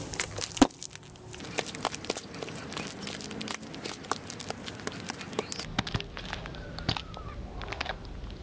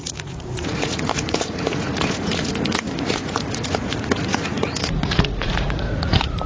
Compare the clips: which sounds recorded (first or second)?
first